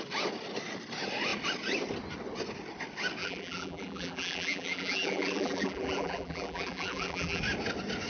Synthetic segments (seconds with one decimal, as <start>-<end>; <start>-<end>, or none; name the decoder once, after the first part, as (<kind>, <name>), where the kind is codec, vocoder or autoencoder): 3.2-7.4 (vocoder, BigVGAN v2)